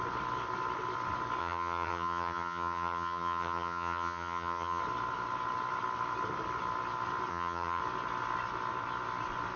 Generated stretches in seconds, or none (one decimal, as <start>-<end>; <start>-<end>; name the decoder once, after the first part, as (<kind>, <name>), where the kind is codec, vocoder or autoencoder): 1.4-4.8 (vocoder, HiFi-GAN); 7.3-7.8